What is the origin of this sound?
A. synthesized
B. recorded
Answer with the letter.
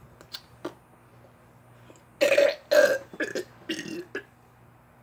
B